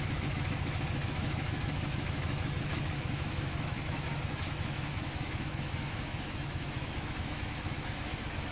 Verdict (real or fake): fake